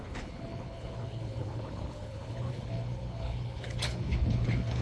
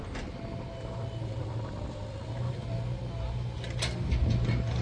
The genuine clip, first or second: second